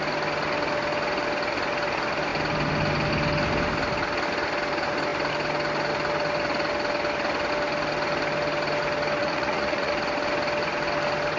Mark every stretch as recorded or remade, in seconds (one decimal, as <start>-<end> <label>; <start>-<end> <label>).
0.0-9.2 recorded; 9.2-9.9 remade; 9.9-11.4 recorded